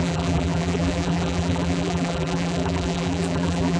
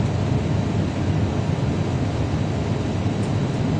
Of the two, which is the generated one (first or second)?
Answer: first